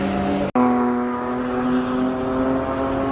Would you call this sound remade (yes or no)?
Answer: no